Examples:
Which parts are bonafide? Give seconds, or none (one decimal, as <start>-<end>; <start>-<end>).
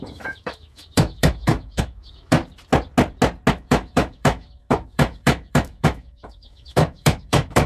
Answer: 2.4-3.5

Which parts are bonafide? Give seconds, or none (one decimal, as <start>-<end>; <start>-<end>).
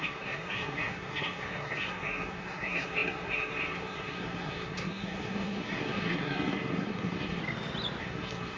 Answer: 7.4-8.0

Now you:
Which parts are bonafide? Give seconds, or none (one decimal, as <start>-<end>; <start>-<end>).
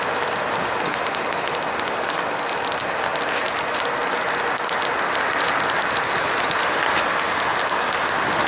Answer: 0.0-8.5